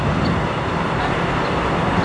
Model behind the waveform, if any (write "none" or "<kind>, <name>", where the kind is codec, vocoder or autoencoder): none